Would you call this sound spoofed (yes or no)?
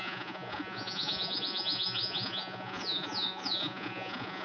yes